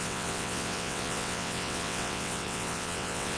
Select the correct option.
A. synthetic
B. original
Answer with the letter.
A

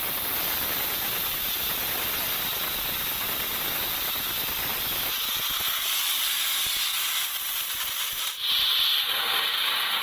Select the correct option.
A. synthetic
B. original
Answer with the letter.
B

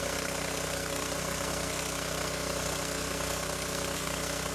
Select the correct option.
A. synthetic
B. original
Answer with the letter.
A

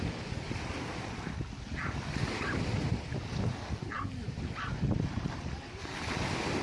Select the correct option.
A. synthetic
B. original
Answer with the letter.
B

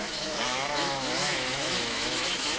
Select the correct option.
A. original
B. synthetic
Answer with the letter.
B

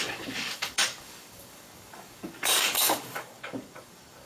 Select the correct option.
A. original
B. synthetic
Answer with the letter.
B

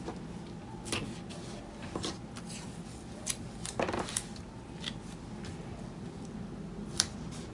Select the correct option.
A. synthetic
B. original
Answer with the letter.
B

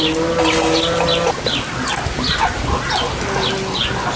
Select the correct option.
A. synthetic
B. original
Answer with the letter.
B